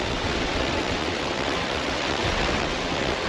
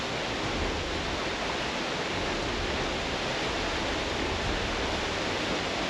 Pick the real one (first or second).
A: second